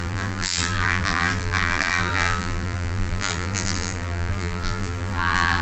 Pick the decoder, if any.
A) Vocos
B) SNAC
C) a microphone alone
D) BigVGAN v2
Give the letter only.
D